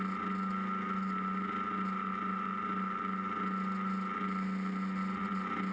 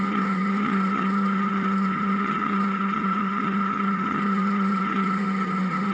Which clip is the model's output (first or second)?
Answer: second